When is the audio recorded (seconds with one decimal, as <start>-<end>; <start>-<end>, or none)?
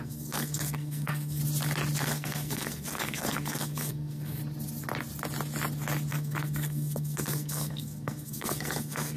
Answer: 1.4-2.0; 4.4-6.1